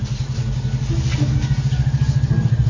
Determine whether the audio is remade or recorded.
recorded